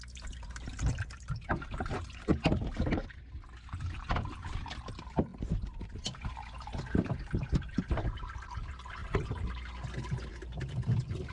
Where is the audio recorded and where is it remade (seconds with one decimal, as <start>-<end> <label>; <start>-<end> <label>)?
0.0-2.3 remade; 2.3-3.8 recorded; 3.8-9.0 remade; 9.0-10.3 recorded; 10.3-11.3 remade